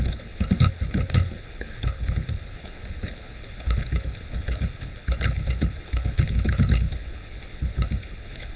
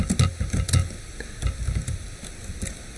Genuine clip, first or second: second